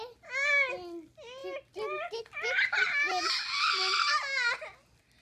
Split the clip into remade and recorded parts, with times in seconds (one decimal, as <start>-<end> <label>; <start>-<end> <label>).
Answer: 0.0-5.2 recorded